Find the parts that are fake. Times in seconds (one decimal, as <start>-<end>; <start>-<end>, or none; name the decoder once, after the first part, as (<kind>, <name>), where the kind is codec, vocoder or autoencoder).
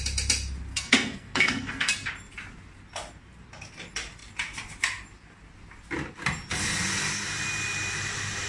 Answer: 0.7-1.9 (codec, SNAC)